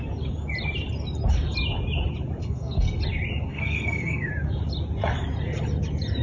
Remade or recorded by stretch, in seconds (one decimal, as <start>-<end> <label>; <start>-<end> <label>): 0.0-2.4 recorded; 2.4-3.0 remade; 3.0-3.5 recorded; 3.5-4.3 remade; 4.3-6.2 recorded